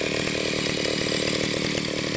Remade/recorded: recorded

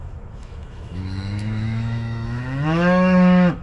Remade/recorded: remade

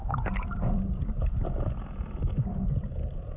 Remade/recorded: recorded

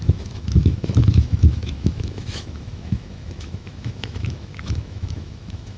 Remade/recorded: remade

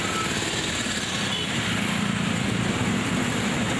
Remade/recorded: recorded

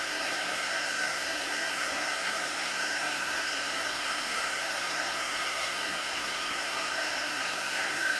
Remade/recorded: remade